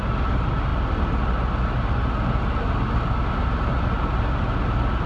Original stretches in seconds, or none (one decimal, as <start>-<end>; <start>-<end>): 0.0-5.1